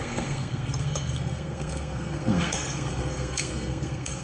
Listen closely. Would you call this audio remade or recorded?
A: remade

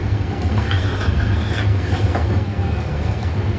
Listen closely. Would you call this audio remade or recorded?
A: remade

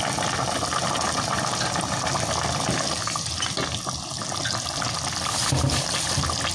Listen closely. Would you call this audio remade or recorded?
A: recorded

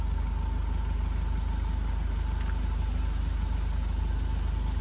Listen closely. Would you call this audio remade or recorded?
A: recorded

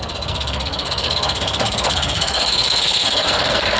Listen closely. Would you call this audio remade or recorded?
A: remade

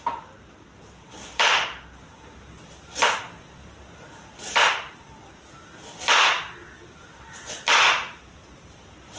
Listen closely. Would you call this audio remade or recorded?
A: recorded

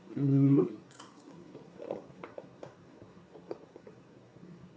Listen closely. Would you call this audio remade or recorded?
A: remade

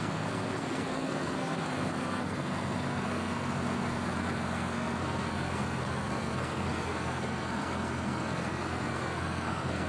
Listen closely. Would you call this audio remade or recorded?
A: remade